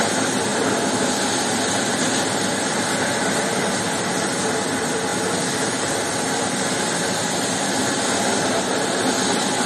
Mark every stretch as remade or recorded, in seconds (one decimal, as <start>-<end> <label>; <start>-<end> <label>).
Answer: 0.0-9.7 recorded

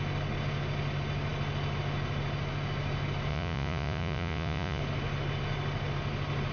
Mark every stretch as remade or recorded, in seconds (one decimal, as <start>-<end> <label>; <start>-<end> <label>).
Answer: 0.0-3.3 recorded; 3.3-4.8 remade; 4.8-6.5 recorded

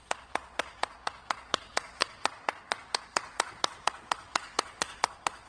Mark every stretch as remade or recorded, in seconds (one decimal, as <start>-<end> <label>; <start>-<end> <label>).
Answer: 0.0-5.5 remade

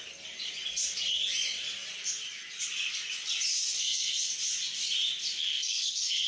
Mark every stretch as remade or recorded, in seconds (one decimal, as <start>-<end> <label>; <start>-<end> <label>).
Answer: 0.0-3.6 recorded; 3.6-4.3 remade; 4.3-5.2 recorded; 5.2-6.3 remade

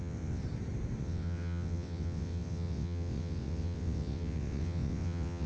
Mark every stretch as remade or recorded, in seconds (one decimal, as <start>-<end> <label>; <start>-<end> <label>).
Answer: 0.0-0.4 remade; 0.4-1.0 recorded; 1.0-5.5 remade

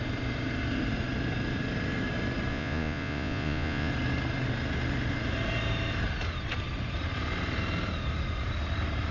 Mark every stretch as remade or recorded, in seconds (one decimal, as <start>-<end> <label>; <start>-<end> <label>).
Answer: 0.0-2.5 recorded; 2.5-3.9 remade; 3.9-9.1 recorded